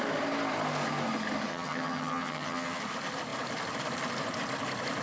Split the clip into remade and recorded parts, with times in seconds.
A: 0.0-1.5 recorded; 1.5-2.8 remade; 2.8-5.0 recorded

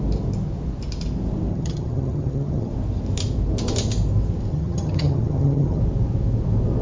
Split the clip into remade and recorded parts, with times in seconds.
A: 0.0-1.5 recorded; 1.5-2.7 remade; 2.7-4.5 recorded; 4.5-5.8 remade; 5.8-6.8 recorded

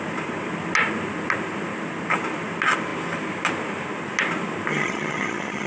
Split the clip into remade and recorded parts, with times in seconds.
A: 0.0-4.7 recorded; 4.7-5.7 remade

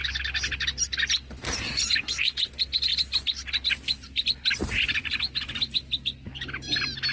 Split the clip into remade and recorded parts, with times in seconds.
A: 0.0-7.1 recorded

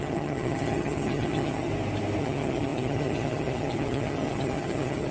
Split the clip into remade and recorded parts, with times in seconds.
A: 0.0-1.7 remade; 1.7-2.2 recorded; 2.2-5.1 remade

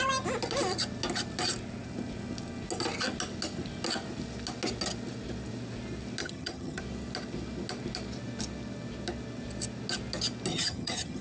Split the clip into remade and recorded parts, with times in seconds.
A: 0.0-6.2 recorded; 6.2-6.8 remade; 6.8-10.5 recorded; 10.5-11.2 remade

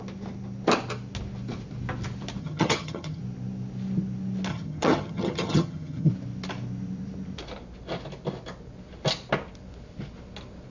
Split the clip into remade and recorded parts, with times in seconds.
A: 0.0-2.4 recorded; 2.4-3.2 remade; 3.2-4.5 recorded; 4.5-6.1 remade; 6.1-10.7 recorded